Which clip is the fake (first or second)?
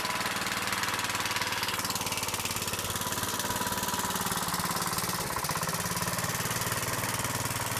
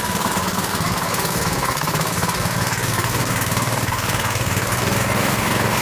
second